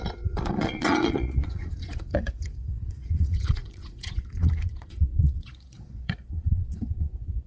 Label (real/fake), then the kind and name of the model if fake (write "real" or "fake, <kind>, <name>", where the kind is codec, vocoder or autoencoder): fake, vocoder, Vocos